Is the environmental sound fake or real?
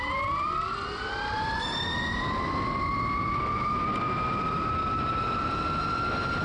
real